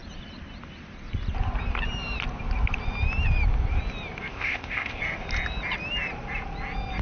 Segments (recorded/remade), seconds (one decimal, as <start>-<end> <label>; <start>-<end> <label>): 0.0-4.3 recorded; 4.3-5.0 remade; 5.0-7.0 recorded

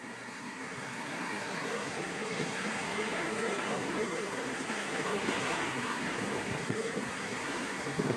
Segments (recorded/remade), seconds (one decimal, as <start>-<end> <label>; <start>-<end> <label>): 0.0-8.2 remade

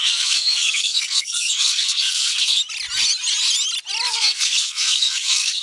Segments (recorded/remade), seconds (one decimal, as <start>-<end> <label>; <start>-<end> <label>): 0.0-2.6 remade; 2.6-4.1 recorded; 4.1-5.6 remade

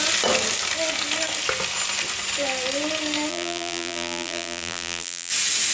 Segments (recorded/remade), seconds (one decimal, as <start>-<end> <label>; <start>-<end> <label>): 0.0-3.3 recorded; 3.3-5.3 remade; 5.3-5.7 recorded

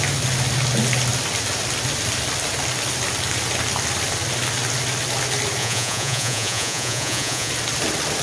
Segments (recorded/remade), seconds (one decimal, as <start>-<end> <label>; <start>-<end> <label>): 0.0-5.6 recorded; 5.6-7.5 remade; 7.5-8.2 recorded

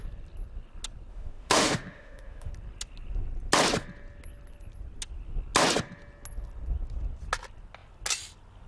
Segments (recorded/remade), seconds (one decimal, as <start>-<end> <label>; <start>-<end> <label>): 0.0-1.1 recorded; 1.1-2.5 remade; 2.5-8.7 recorded

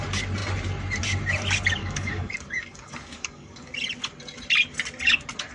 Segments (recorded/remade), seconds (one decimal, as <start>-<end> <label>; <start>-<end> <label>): 0.0-1.8 recorded; 1.8-3.7 remade; 3.7-5.5 recorded